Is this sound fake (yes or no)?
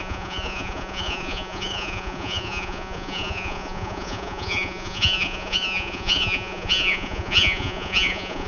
yes